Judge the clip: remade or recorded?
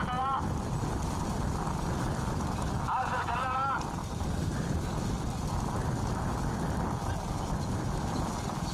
recorded